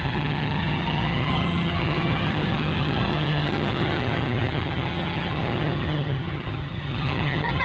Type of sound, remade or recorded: remade